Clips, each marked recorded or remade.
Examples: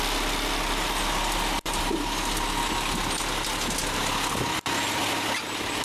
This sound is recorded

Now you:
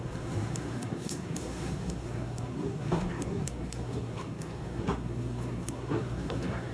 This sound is remade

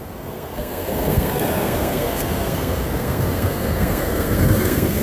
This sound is remade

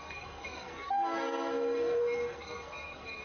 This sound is remade